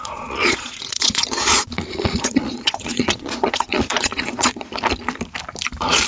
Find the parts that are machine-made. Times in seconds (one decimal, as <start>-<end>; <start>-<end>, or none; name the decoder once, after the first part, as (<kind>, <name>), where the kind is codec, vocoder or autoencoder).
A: 0.0-4.7 (vocoder, Vocos)